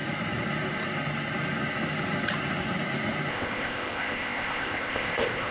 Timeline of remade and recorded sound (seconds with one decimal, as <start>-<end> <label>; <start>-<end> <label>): 0.0-3.3 recorded; 3.3-5.5 remade